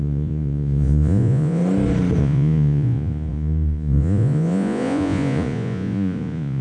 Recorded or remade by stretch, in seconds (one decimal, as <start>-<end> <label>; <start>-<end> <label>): 0.0-1.6 remade; 1.6-2.2 recorded; 2.2-6.6 remade